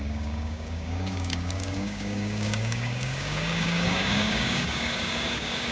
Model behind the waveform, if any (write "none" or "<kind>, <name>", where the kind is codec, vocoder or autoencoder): codec, DAC